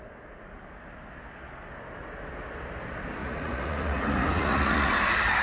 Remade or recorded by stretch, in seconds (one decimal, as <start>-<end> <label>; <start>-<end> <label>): 0.0-3.2 recorded; 3.2-4.9 remade; 4.9-5.4 recorded